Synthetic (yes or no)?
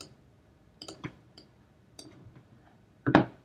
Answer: yes